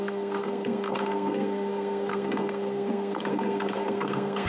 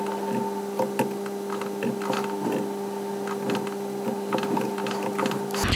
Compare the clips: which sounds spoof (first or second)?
first